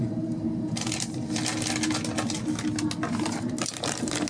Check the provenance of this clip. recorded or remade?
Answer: recorded